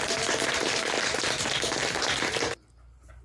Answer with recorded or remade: recorded